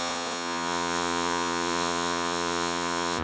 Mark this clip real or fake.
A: fake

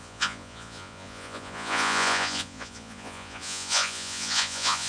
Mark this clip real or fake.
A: fake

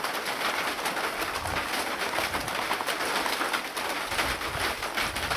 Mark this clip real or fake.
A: real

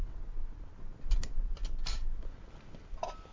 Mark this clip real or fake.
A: real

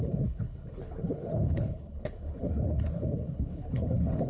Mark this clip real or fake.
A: fake